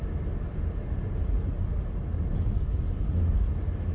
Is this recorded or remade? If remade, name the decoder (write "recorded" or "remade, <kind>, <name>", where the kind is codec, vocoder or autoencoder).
recorded